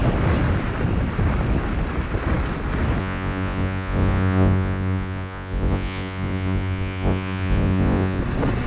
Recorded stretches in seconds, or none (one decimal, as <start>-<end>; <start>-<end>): 0.0-3.0; 8.2-8.7